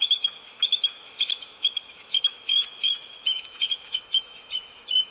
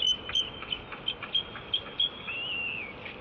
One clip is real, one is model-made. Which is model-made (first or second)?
first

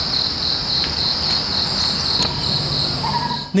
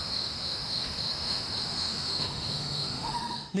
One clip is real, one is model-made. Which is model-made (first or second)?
second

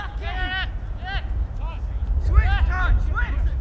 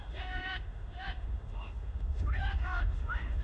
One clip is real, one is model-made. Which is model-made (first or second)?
second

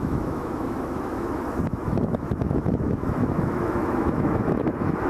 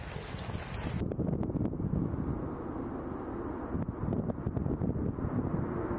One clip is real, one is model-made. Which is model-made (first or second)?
first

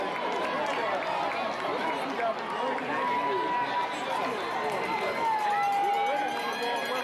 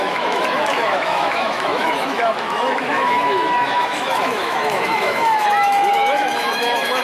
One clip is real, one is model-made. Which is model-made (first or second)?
second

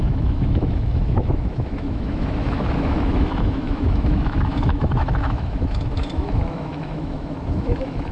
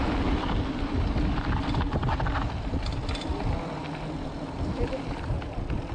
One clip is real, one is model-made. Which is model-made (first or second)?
first